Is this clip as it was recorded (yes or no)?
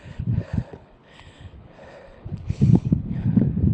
no